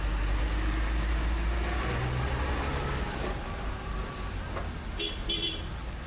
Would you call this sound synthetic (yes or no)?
no